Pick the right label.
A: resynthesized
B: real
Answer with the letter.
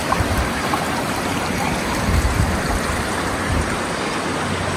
A